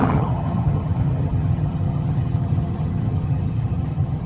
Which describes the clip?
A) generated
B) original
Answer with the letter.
A